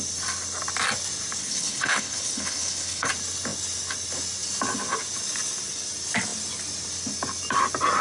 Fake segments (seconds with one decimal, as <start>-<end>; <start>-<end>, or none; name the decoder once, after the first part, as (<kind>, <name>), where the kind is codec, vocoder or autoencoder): 1.4-3.1 (codec, HILCodec)